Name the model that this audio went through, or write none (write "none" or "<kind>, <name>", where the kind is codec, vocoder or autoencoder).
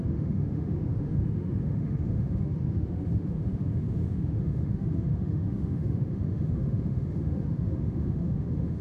autoencoder, DAC-VAE